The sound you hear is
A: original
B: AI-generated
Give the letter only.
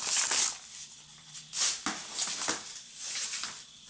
A